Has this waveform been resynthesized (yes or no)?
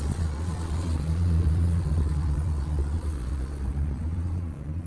yes